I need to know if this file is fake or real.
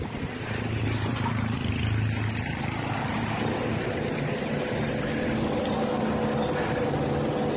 real